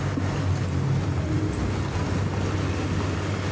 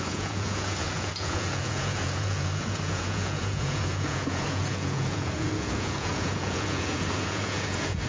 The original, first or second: first